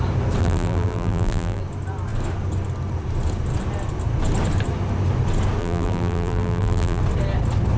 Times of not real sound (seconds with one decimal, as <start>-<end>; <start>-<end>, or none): 0.4-1.6; 5.6-7.0